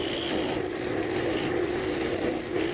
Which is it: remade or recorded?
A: recorded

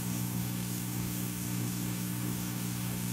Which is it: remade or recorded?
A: remade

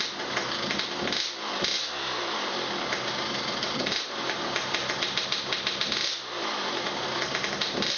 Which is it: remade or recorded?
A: recorded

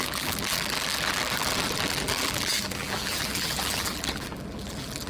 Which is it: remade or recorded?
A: remade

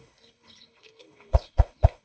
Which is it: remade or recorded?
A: remade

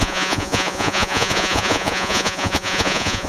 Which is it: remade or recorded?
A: remade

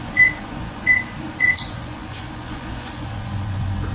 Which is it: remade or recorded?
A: remade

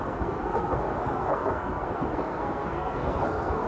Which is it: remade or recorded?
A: remade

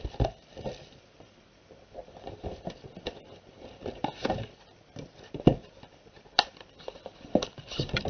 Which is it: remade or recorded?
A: remade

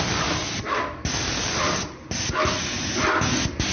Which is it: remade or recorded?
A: recorded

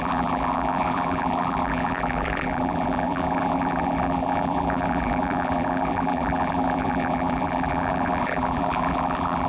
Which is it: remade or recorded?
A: remade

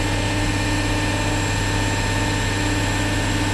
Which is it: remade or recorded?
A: recorded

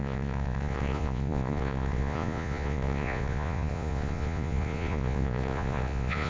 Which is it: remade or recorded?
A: remade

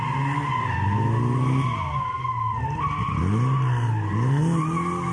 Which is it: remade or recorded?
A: recorded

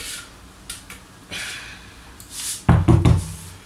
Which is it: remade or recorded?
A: recorded